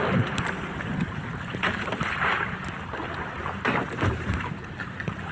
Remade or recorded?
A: recorded